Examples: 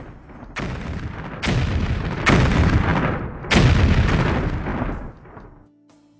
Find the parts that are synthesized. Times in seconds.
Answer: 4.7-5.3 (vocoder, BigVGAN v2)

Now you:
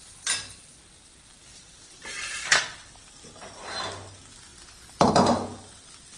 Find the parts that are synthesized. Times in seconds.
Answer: 1.5-2.6 (vocoder, BigVGAN v2); 4.5-5.1

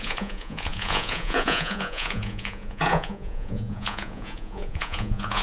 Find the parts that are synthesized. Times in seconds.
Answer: 0.0-5.4 (vocoder, Vocos)

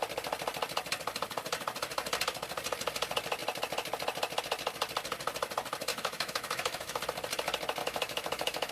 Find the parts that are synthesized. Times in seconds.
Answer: 5.9-7.0 (autoencoder, DAC-VAE); 7.8-8.7

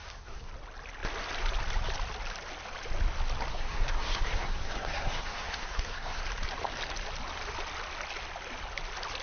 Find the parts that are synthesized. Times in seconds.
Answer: 0.0-0.5 (codec, SNAC); 3.5-6.2

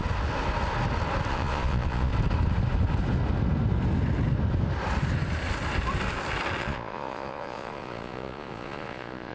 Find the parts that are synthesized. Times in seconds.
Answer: 1.3-2.1 (vocoder, Vocos); 6.6-9.3

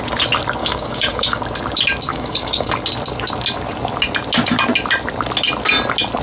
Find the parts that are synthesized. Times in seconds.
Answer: 0.6-1.4 (codec, DAC); 2.1-2.7